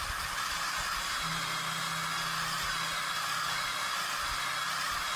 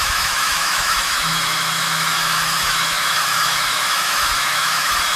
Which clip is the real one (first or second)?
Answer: first